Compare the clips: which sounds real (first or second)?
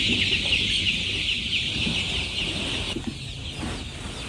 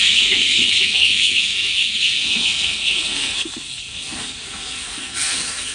first